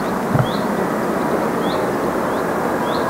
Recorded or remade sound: recorded